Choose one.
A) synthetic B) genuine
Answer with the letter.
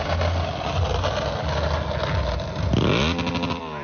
B